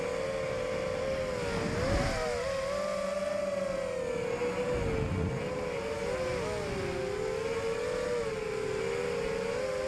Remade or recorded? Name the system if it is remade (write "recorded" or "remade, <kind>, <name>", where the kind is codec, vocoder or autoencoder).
recorded